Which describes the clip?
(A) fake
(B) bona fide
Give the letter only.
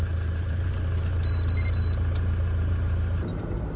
A